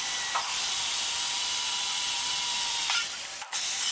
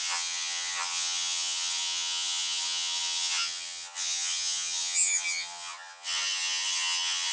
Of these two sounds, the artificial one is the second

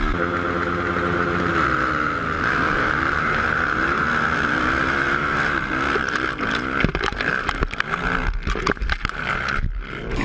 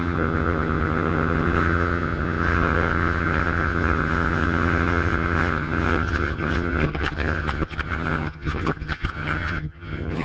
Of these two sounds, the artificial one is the second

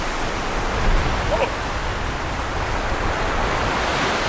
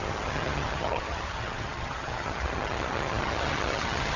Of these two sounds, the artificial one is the second